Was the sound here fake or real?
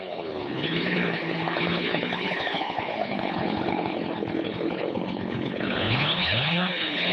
fake